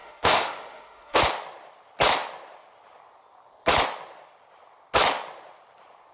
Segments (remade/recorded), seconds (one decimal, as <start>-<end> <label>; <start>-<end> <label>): 0.0-1.2 remade; 1.2-6.1 recorded

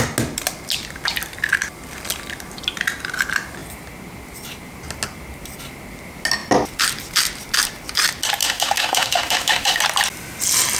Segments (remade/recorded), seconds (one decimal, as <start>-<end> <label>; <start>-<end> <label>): 0.0-8.4 recorded; 8.4-9.8 remade; 9.8-10.8 recorded

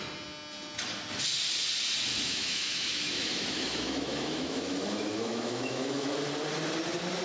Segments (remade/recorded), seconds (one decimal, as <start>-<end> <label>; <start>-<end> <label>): 0.0-2.1 recorded; 2.1-6.1 remade; 6.1-7.2 recorded

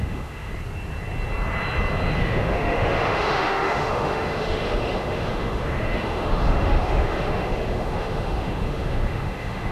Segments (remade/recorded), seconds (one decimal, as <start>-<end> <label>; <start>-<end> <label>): 0.0-0.5 remade; 0.5-2.2 recorded; 2.2-9.7 remade

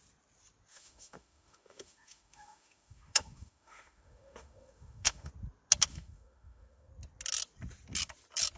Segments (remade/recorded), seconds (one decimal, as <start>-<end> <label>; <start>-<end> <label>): 0.0-0.7 recorded; 0.7-5.3 remade; 5.3-5.9 recorded; 5.9-6.9 remade; 6.9-8.6 recorded

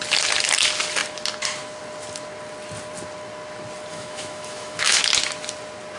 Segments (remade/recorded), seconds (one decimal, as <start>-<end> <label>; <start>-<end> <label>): 0.0-3.9 recorded; 3.9-5.0 remade; 5.0-6.0 recorded

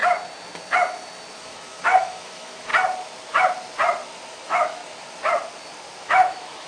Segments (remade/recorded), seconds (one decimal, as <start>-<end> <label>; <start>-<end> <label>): 0.0-1.4 recorded; 1.4-2.7 remade; 2.7-4.3 recorded; 4.3-4.8 remade; 4.8-6.0 recorded; 6.0-6.7 remade